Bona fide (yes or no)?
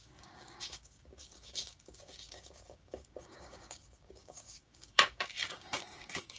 no